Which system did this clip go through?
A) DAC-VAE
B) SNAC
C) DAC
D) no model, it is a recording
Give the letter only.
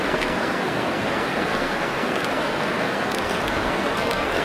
B